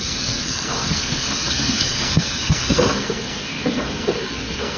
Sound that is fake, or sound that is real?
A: fake